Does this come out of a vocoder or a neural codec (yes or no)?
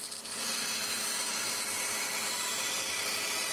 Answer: no